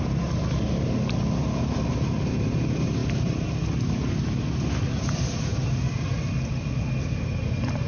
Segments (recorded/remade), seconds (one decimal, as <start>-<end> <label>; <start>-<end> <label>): 0.0-7.9 recorded